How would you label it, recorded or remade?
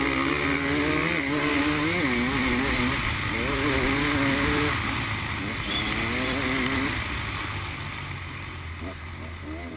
recorded